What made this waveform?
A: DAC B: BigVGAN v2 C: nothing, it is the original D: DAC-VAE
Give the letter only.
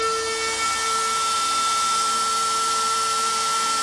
C